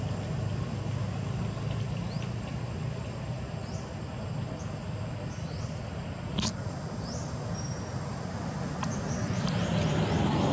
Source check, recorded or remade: recorded